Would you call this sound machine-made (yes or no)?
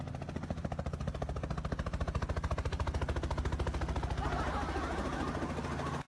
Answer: no